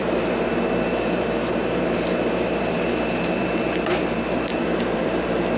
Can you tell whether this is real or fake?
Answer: fake